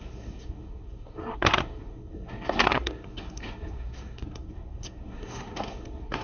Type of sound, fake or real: fake